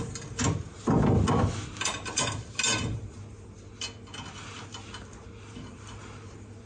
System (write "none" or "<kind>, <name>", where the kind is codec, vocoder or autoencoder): none